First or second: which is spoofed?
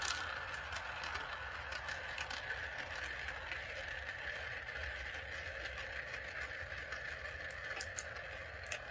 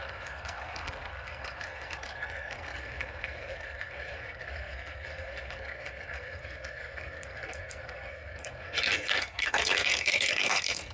second